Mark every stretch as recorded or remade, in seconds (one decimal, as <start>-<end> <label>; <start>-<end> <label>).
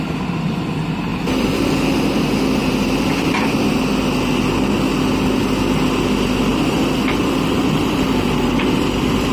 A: 0.0-1.1 recorded; 1.1-1.7 remade; 1.7-6.5 recorded; 6.5-9.3 remade